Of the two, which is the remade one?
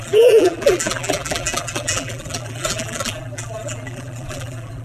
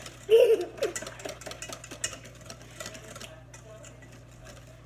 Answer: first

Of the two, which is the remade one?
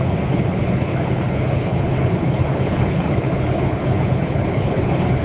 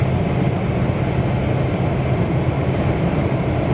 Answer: first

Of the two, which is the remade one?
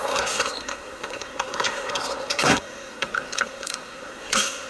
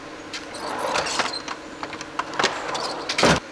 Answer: first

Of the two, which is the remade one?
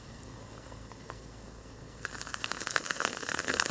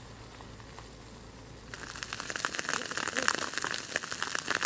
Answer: first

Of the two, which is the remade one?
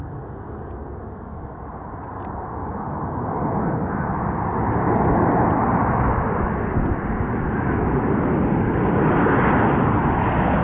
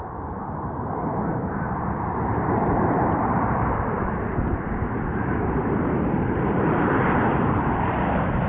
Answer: second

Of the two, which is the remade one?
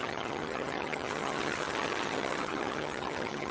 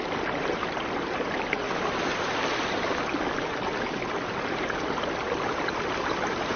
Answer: first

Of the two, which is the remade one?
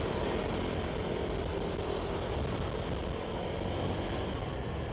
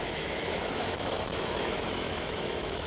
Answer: second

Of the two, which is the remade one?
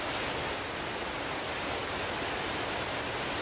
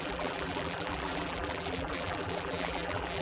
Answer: second